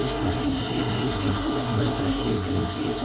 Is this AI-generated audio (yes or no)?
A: yes